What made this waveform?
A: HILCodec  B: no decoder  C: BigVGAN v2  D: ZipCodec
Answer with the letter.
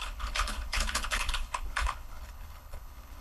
A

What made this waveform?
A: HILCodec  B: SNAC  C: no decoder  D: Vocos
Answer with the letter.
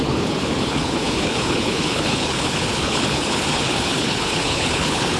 A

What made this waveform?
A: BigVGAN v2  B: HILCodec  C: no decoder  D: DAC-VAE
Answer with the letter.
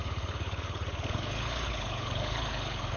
B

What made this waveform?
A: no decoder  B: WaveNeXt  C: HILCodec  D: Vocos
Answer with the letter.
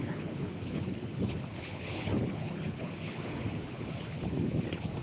C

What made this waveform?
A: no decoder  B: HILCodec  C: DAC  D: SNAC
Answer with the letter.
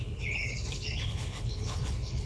B